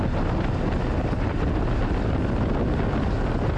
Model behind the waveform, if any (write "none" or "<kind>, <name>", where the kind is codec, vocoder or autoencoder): none